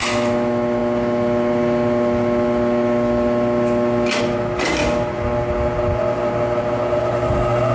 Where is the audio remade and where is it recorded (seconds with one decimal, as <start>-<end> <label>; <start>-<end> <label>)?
0.0-7.7 recorded